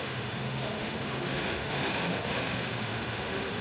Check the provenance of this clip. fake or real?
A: fake